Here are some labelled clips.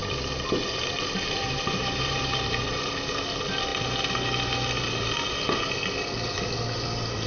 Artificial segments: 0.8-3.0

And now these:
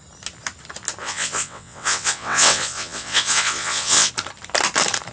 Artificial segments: 1.0-4.1

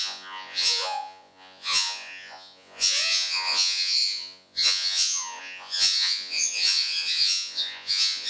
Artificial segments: 0.0-8.3

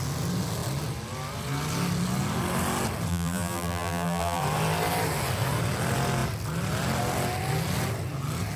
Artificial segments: 3.1-4.4

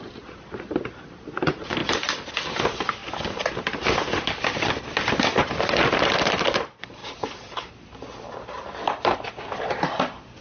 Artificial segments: none

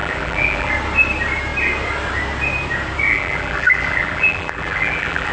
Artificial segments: 0.0-0.7; 3.1-5.3

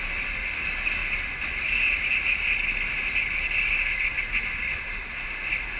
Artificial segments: none